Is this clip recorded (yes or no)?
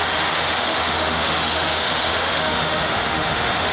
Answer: no